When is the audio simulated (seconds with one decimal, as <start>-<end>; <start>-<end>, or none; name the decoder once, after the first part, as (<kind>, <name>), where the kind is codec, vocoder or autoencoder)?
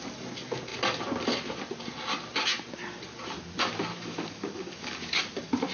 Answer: 3.9-5.2 (codec, DAC)